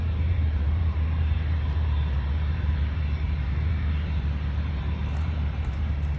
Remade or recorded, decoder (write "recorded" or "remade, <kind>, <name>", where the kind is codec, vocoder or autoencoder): remade, vocoder, BigVGAN v2